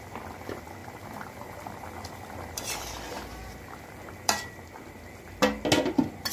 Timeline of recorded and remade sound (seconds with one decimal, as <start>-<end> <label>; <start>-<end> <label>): 0.0-0.8 recorded; 0.8-4.6 remade; 4.6-6.3 recorded